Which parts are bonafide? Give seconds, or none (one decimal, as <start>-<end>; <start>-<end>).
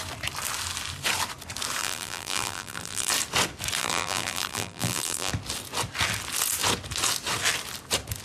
0.0-1.8; 3.1-3.8; 5.3-8.2